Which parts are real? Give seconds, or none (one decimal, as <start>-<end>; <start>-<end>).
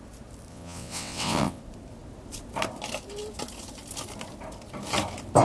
0.0-0.5; 1.6-5.4